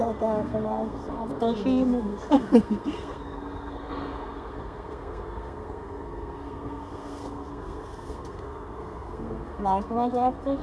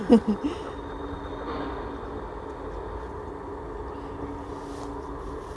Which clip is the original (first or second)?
second